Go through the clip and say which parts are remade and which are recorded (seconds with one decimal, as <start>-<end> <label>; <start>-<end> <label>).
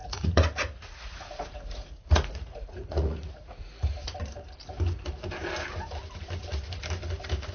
0.0-4.0 remade; 4.0-7.5 recorded